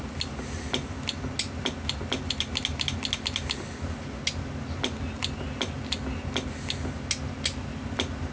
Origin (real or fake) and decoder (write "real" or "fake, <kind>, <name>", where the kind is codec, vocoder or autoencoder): real